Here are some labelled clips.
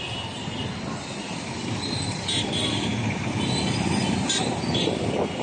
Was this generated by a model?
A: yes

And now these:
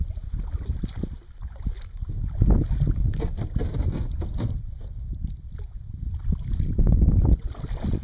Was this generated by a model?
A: no